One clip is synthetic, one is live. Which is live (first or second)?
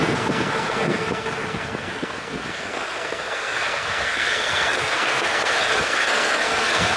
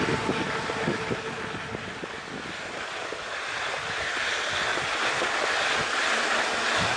second